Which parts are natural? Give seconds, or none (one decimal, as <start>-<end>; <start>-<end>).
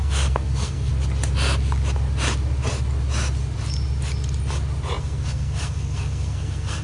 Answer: 0.9-5.0